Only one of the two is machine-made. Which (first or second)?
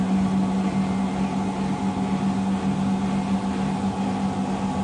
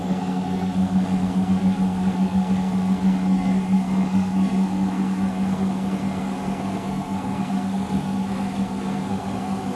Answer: second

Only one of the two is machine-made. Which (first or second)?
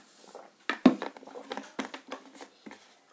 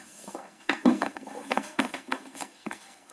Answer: second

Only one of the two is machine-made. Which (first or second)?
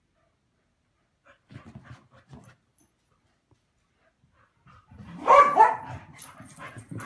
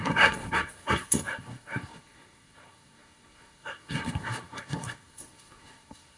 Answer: second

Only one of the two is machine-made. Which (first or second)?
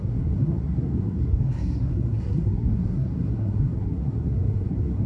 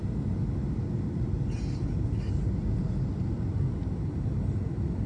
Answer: first